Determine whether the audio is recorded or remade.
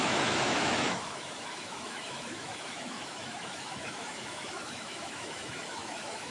remade